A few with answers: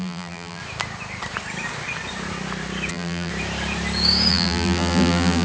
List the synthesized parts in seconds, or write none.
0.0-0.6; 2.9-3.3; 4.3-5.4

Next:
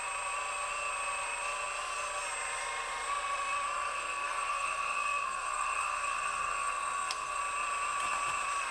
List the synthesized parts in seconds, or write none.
3.9-7.4

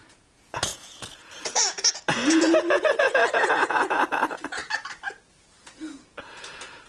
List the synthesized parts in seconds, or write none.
0.0-4.6; 5.6-6.9

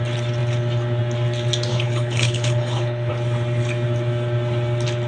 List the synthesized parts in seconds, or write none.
1.7-3.1

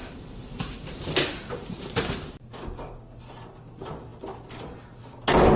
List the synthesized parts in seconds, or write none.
0.0-2.3

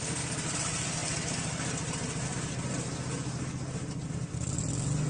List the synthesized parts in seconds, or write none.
none

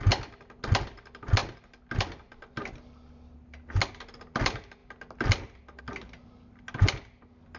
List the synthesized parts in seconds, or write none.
none

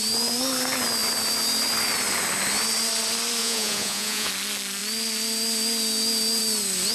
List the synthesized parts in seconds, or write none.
3.4-4.3